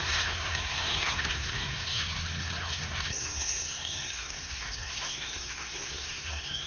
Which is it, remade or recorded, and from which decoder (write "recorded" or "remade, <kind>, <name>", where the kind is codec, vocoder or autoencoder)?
remade, codec, SNAC